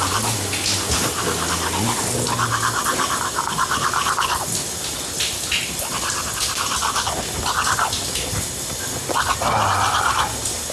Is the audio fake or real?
real